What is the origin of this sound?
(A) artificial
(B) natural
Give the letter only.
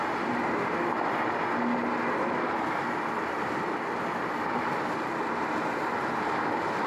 B